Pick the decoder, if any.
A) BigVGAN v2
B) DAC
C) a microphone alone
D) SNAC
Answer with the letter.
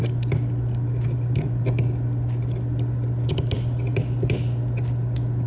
C